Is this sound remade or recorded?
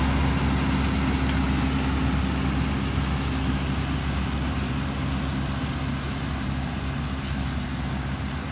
recorded